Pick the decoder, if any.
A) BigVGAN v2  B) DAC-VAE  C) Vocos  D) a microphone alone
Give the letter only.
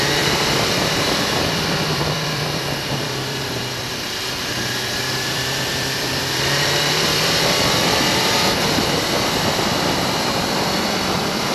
A